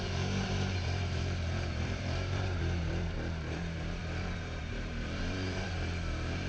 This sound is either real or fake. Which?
fake